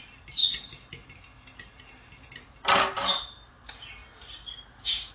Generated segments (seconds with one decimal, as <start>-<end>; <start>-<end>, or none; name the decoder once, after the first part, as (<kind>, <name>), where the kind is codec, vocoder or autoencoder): none